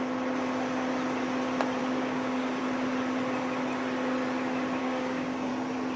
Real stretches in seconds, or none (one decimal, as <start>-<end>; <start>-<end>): 0.0-1.8; 2.6-4.8; 5.5-6.0